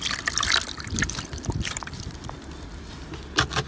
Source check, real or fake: real